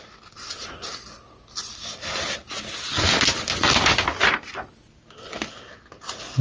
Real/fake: real